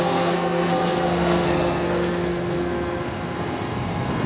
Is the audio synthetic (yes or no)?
yes